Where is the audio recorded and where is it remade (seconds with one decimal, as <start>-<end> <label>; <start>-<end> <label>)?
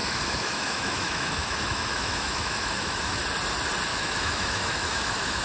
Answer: 0.0-3.2 remade; 3.2-3.9 recorded; 3.9-5.4 remade